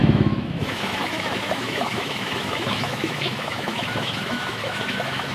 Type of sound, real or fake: fake